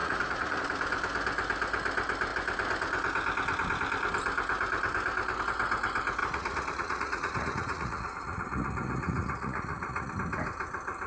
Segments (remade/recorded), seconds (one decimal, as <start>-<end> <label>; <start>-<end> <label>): 0.0-0.6 remade; 0.6-6.2 recorded; 6.2-10.1 remade; 10.1-11.1 recorded